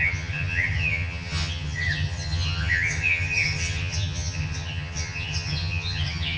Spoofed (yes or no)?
yes